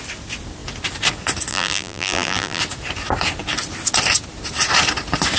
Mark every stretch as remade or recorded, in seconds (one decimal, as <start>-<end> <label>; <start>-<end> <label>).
0.0-1.5 recorded; 1.5-2.6 remade; 2.6-5.4 recorded